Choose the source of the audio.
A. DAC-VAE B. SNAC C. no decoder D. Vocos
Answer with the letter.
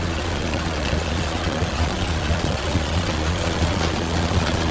D